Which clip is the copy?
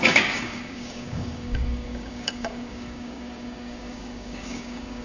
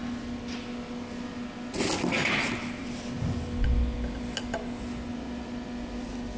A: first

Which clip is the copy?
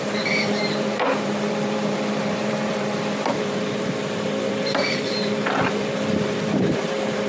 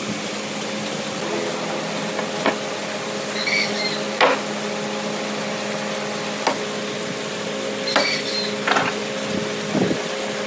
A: first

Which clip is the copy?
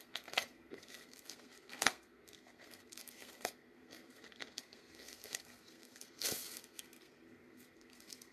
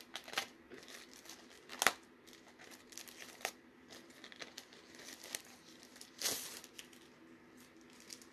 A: first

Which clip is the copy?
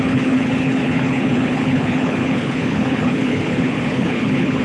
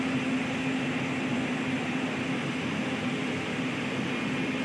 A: first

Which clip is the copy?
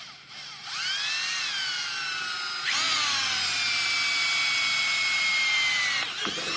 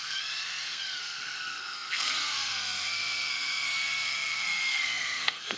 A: second